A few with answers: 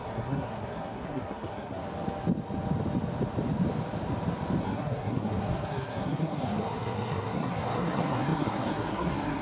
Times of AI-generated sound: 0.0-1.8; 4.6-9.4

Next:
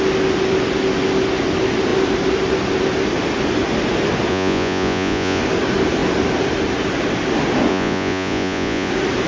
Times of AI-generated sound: 4.3-5.4; 7.7-8.9

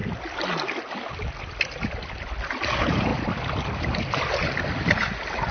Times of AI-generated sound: none

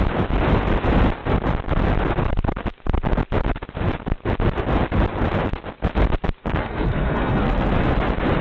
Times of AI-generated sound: 6.4-7.7

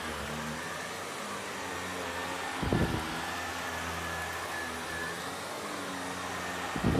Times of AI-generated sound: none